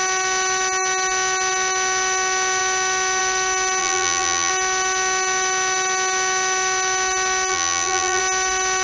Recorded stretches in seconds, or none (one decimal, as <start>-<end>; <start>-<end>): 0.0-3.8; 4.5-7.5; 8.2-8.8